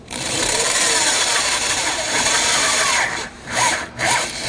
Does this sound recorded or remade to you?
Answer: remade